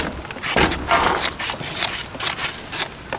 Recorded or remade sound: recorded